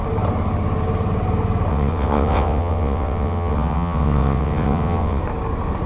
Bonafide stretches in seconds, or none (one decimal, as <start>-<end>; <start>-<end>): 0.0-1.7; 5.2-5.9